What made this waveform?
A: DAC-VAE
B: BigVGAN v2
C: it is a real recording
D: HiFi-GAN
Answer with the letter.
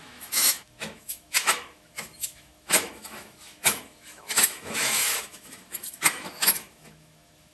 A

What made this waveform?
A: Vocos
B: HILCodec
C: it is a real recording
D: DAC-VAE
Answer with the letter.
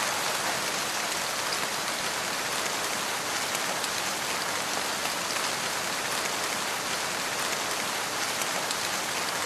C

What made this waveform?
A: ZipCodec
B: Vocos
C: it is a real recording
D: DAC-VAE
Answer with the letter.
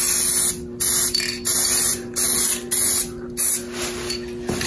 C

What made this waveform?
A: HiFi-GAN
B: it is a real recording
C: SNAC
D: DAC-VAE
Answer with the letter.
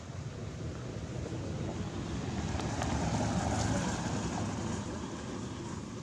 B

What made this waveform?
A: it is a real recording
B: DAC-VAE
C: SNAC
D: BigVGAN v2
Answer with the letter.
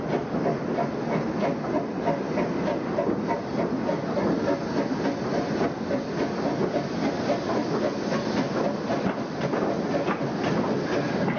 A